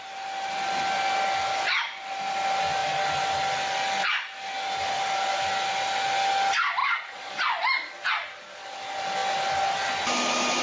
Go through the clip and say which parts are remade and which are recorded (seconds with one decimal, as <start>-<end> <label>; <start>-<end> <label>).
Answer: 0.0-6.8 recorded; 6.8-7.3 remade; 7.3-10.6 recorded

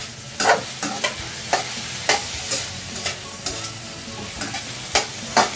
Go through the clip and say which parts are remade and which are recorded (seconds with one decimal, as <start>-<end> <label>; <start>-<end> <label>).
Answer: 0.0-5.6 recorded

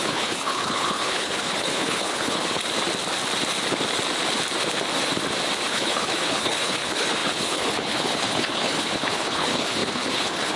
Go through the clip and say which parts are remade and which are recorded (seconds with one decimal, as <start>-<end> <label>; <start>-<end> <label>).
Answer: 0.0-2.6 remade; 2.6-5.7 recorded; 5.7-10.6 remade

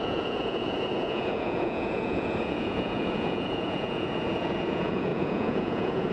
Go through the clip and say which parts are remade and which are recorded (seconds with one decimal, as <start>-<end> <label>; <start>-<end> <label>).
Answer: 0.0-6.1 remade

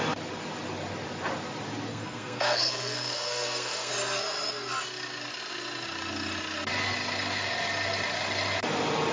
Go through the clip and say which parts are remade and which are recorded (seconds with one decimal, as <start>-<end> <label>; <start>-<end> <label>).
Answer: 0.0-1.9 recorded; 1.9-3.9 remade; 3.9-9.1 recorded

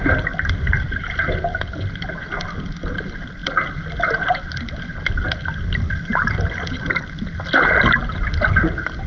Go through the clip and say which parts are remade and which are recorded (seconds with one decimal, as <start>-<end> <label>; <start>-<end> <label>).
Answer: 0.0-9.1 recorded